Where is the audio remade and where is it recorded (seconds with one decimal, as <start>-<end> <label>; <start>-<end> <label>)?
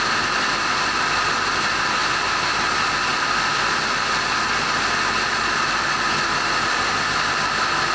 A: 0.0-7.9 recorded